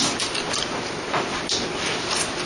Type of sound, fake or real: real